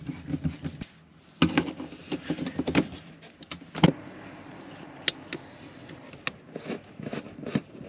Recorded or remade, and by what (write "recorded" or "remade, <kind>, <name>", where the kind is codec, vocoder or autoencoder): recorded